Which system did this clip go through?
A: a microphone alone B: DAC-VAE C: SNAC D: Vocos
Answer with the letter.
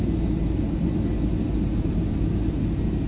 A